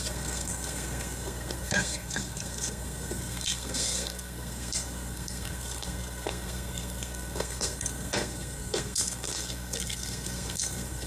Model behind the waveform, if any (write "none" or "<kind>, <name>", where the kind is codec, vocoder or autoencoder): codec, SNAC